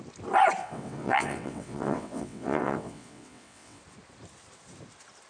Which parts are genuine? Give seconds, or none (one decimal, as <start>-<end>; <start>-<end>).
0.0-0.6; 3.8-5.3